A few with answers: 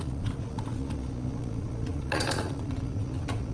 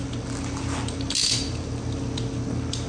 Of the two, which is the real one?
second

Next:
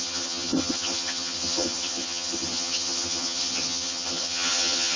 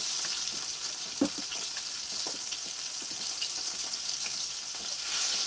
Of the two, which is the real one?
second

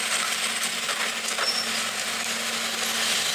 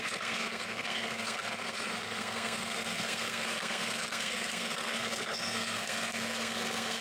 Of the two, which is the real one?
first